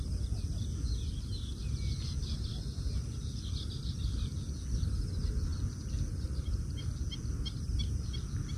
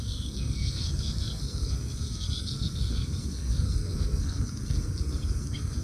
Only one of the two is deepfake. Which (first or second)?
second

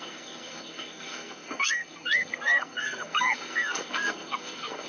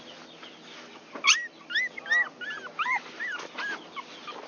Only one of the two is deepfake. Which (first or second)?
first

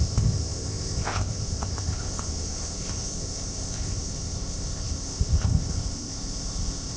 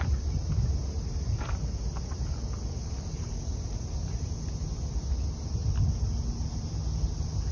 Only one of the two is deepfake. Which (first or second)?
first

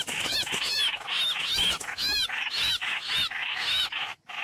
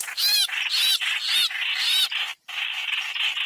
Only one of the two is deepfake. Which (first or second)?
first